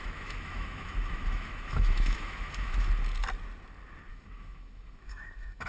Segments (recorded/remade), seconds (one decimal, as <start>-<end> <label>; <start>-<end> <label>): 0.0-2.9 remade; 2.9-4.1 recorded; 4.1-5.7 remade